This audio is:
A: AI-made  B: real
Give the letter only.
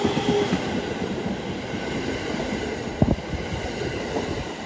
B